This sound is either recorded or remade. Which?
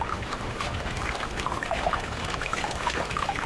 remade